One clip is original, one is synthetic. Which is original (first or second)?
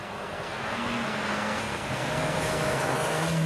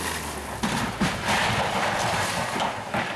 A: second